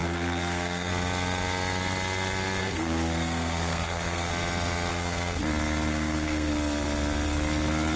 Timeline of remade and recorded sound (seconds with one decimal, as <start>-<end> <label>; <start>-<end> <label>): 0.0-0.9 remade; 0.9-2.6 recorded; 2.6-4.3 remade; 4.3-4.9 recorded; 4.9-5.4 remade; 5.4-5.9 recorded; 5.9-6.5 remade; 6.5-8.0 recorded